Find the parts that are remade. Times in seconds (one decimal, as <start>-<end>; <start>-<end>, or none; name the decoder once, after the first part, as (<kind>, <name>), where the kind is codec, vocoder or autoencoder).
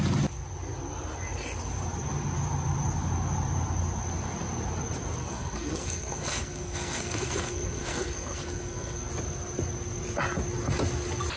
5.2-9.1 (codec, SNAC)